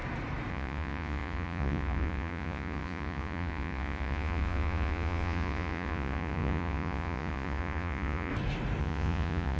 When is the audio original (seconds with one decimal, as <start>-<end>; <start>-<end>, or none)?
0.0-0.5; 8.3-8.8